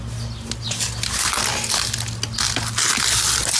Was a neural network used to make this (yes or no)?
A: no